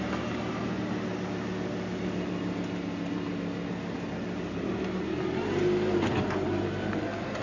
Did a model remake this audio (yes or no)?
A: no